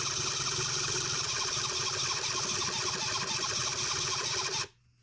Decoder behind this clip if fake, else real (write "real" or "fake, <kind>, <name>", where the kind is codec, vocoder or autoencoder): real